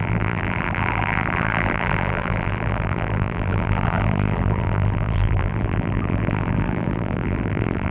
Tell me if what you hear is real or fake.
fake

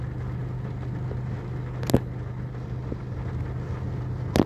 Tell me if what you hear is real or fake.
real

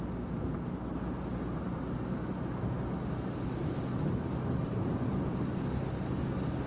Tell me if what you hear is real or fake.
real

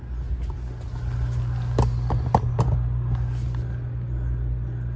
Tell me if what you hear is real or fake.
real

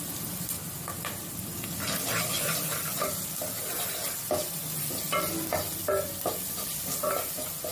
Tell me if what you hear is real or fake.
real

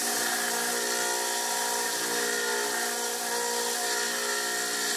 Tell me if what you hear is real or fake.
real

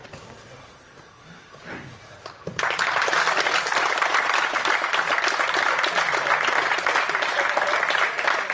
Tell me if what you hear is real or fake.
fake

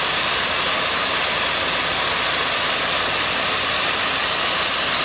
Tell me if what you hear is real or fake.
fake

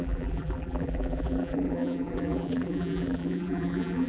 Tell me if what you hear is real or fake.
fake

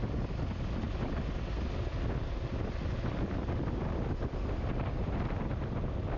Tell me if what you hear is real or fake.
real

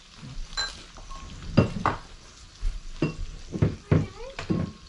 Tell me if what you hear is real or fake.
real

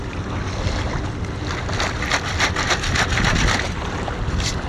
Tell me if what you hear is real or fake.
real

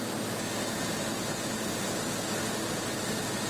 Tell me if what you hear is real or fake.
real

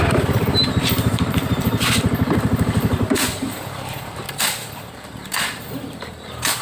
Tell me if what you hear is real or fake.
fake